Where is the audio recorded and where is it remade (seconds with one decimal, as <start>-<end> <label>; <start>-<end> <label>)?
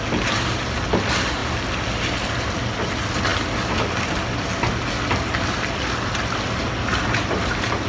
0.0-7.9 recorded